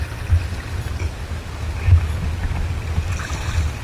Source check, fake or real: real